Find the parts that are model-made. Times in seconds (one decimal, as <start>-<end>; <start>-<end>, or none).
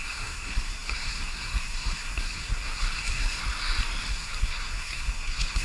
0.0-3.4; 4.1-5.6